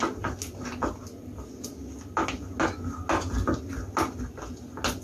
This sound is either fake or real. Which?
real